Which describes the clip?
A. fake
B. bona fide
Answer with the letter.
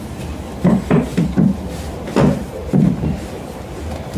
B